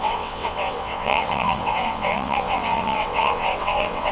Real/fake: fake